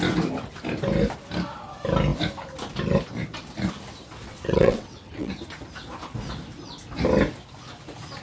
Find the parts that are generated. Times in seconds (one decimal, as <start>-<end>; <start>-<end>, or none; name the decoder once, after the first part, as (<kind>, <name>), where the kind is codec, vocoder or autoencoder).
4.2-5.3 (vocoder, WaveNeXt)